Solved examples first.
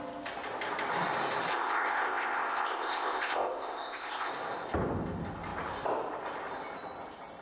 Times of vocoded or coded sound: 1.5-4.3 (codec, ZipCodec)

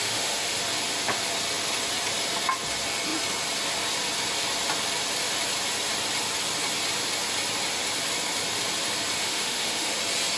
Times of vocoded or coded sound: 0.0-0.6 (autoencoder, DAC-VAE); 9.2-10.0

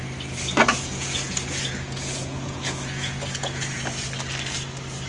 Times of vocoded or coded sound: 0.7-3.8 (vocoder, Vocos)